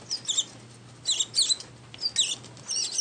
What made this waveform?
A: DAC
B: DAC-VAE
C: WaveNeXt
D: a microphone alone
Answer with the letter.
D